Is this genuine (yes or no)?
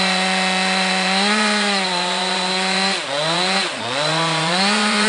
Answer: no